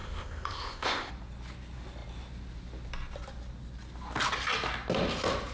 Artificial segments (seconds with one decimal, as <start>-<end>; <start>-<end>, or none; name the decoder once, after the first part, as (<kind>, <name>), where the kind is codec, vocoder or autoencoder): 0.0-1.1 (codec, ZipCodec)